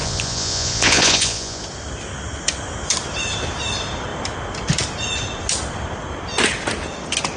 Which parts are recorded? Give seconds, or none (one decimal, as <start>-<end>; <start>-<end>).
1.6-7.4